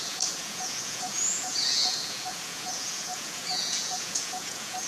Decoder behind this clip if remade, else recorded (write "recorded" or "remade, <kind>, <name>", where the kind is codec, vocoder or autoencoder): remade, vocoder, Vocos